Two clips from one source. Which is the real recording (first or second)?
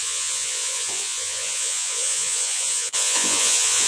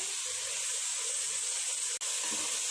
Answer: second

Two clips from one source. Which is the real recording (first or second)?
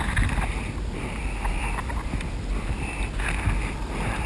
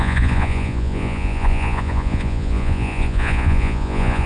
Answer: first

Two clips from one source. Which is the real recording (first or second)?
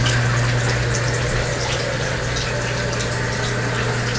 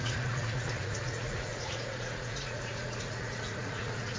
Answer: first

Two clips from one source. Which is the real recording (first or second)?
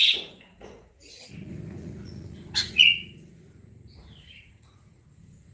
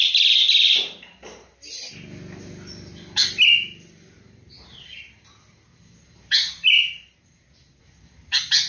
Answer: second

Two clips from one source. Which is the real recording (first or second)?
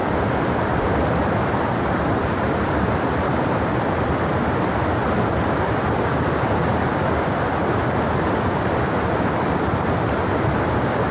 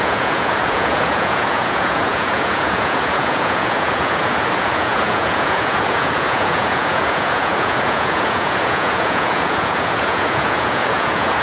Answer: first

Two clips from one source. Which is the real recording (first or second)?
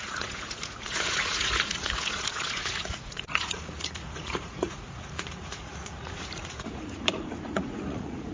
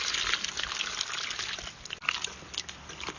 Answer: second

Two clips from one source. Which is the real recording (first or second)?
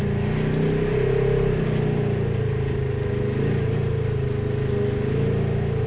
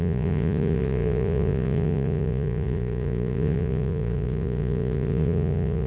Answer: first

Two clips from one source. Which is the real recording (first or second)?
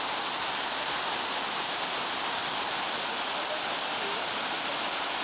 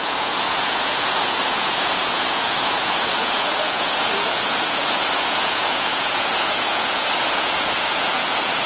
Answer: first